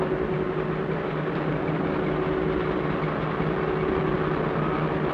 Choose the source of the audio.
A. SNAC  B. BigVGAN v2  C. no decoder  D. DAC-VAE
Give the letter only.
C